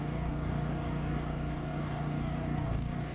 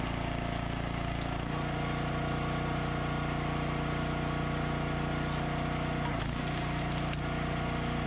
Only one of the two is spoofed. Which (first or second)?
first